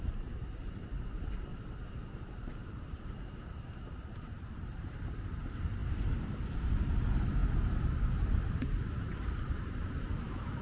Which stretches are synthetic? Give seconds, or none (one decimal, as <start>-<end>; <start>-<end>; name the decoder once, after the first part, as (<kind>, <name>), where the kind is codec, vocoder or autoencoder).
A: 0.0-1.5 (vocoder, BigVGAN v2); 2.7-10.6